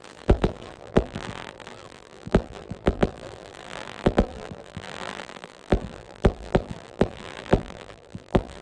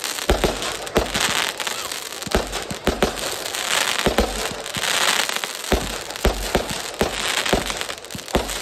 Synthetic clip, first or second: first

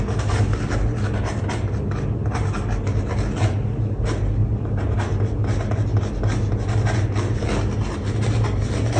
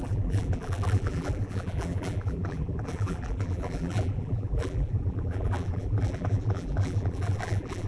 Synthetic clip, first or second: second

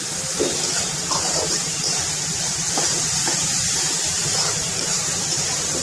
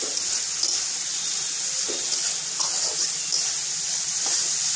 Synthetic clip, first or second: first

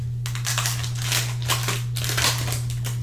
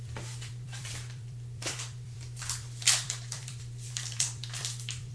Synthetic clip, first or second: second